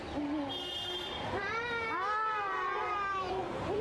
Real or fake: fake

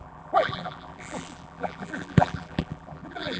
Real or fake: fake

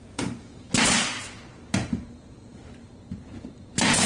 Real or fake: fake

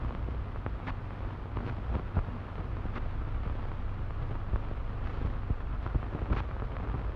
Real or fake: real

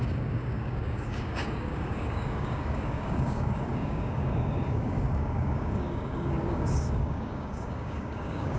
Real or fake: fake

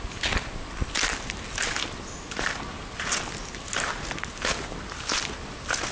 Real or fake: real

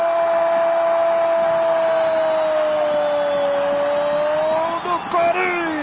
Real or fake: real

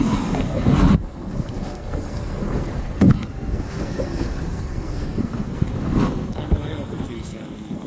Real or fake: fake